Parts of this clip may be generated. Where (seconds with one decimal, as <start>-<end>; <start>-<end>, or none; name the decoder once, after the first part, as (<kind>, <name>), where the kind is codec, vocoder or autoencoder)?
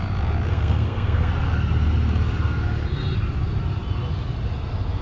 0.5-1.3 (codec, SNAC)